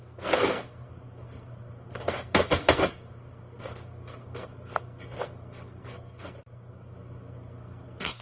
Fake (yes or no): yes